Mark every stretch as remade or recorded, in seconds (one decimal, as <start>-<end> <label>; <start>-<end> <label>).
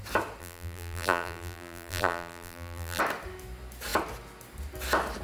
0.0-0.4 recorded; 0.4-3.0 remade; 3.0-5.2 recorded